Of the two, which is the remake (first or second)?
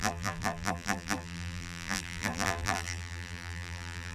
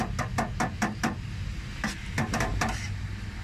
first